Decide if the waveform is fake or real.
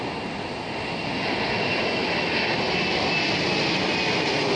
real